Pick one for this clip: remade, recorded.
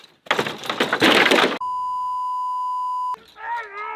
recorded